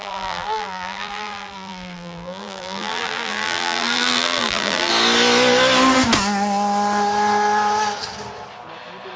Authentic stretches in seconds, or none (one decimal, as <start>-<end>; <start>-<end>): 4.9-9.2